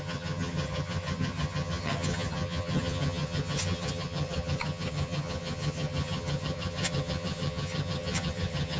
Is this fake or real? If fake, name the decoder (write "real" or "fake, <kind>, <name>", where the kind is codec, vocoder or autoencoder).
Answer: fake, vocoder, HiFi-GAN